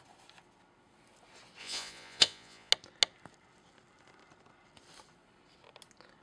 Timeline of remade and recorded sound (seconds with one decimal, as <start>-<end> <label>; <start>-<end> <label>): 0.0-1.6 recorded; 1.6-2.7 remade; 2.7-6.2 recorded